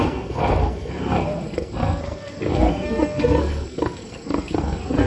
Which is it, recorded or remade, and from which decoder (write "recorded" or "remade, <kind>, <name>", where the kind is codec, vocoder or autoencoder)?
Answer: remade, codec, SNAC